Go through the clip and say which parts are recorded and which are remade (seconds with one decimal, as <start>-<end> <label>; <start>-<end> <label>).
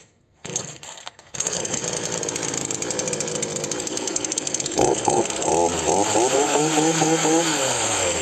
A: 0.0-1.8 remade; 1.8-3.8 recorded; 3.8-5.5 remade; 5.5-6.3 recorded; 6.3-8.2 remade